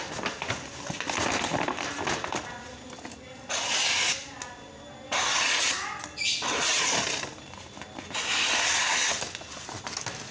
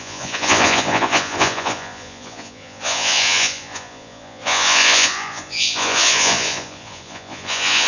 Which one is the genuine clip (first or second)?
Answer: first